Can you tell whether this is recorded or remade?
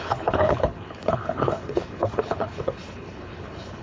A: remade